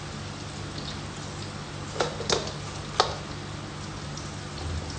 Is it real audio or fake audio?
real